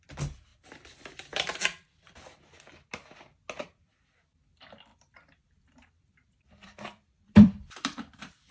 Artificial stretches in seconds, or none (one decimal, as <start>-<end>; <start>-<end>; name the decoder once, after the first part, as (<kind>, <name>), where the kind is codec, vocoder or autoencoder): 0.5-2.2 (vocoder, BigVGAN v2); 4.9-8.5